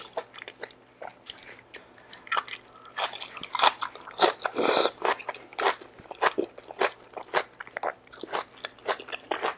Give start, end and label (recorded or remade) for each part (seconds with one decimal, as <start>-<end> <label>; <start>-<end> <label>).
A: 0.0-1.1 recorded; 1.1-2.4 remade; 2.4-9.6 recorded